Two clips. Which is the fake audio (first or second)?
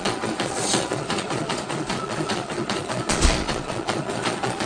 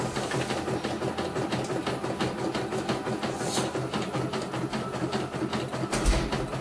first